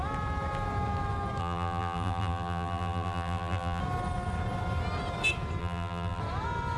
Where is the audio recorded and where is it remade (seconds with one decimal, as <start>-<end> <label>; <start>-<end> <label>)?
0.0-1.4 recorded; 1.4-3.8 remade; 3.8-5.6 recorded; 5.6-6.2 remade; 6.2-6.8 recorded